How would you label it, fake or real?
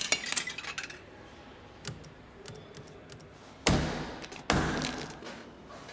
real